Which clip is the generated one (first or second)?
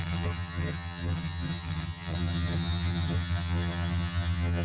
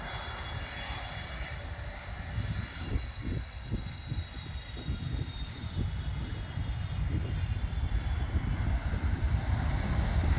first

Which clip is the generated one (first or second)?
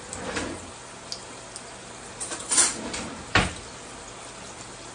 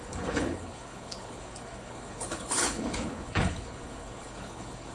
second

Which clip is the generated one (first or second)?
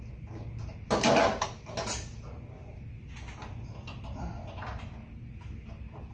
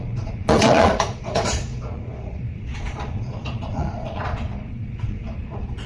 second